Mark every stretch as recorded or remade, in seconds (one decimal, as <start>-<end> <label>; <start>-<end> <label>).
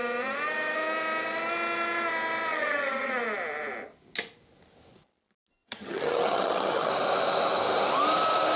0.0-2.5 recorded; 2.5-3.1 remade; 3.1-5.5 recorded; 5.5-6.9 remade; 6.9-8.6 recorded